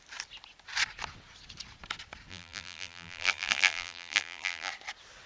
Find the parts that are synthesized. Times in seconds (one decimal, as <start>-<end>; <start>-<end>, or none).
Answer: 2.3-4.7

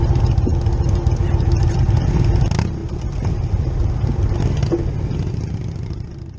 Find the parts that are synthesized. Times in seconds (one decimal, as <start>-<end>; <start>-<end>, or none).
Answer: 2.8-3.9

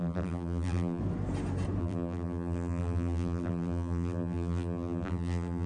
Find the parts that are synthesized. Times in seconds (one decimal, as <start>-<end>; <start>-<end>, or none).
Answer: 0.0-1.0; 1.8-5.7

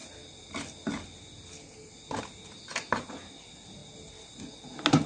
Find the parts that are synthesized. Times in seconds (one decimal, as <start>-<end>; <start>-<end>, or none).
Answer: none

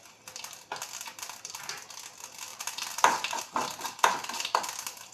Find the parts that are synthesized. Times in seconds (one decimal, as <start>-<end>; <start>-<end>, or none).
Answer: 2.5-3.4

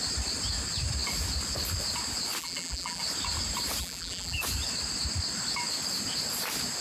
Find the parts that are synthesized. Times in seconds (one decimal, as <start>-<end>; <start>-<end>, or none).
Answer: 2.4-3.0; 3.8-4.4

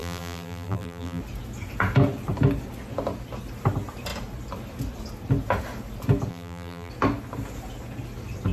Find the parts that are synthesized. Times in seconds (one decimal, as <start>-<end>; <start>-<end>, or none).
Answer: 0.0-1.2; 6.3-6.9